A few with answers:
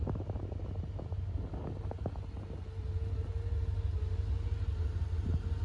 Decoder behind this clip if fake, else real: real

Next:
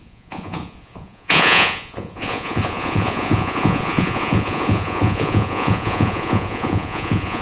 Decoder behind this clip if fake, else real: fake, vocoder, Vocos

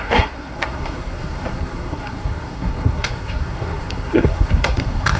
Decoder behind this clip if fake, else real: fake, codec, SNAC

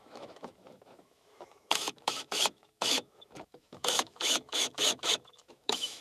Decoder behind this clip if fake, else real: fake, autoencoder, DAC-VAE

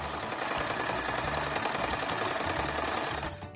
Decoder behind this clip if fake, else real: real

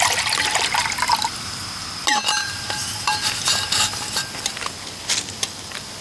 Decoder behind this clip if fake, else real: real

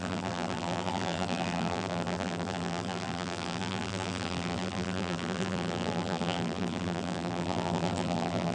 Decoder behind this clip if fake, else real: fake, vocoder, BigVGAN v2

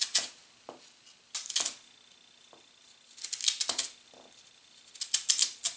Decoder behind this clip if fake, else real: real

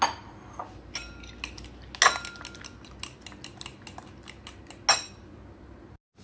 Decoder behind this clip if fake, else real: real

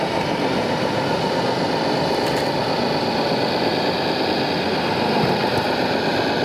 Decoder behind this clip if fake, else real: real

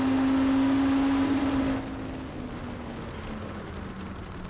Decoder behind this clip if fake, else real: real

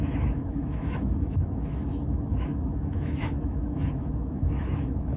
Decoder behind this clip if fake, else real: fake, autoencoder, DAC-VAE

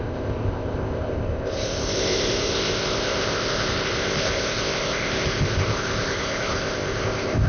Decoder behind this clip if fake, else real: fake, codec, ZipCodec